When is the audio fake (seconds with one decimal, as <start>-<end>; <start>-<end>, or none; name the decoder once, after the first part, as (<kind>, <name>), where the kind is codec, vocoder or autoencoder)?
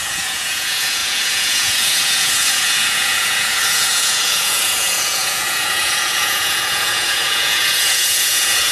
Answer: 0.0-8.7 (vocoder, Vocos)